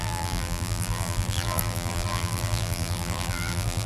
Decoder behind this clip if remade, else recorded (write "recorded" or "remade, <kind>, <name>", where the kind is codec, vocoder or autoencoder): remade, vocoder, BigVGAN v2